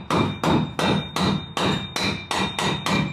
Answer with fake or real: real